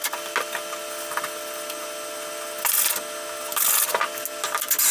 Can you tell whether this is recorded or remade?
recorded